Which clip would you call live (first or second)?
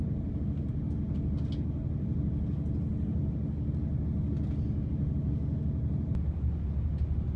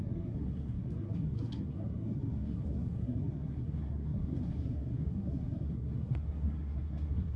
first